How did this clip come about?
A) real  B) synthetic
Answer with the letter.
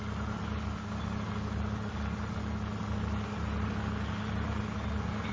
A